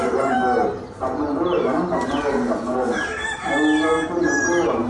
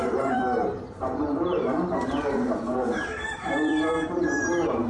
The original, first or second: first